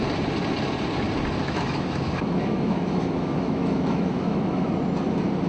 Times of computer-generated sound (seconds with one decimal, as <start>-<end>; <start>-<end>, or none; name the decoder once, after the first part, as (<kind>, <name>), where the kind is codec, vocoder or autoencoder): 1.4-4.7 (autoencoder, DAC-VAE)